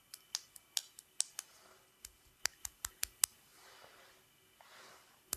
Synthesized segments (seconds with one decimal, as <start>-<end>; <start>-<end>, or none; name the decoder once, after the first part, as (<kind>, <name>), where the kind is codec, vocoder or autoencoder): none